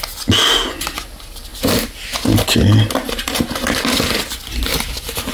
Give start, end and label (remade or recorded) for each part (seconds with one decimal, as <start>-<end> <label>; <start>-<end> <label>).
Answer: 0.0-5.3 recorded